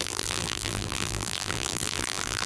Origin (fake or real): fake